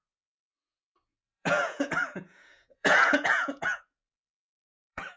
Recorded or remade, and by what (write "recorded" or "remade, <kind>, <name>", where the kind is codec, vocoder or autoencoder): remade, vocoder, Vocos